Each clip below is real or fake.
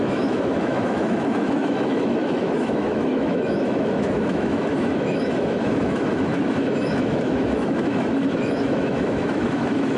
fake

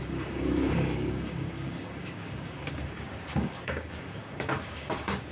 fake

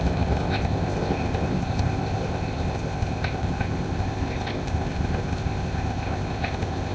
fake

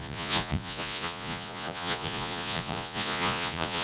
fake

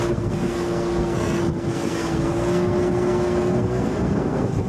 fake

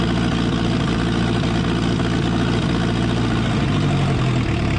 real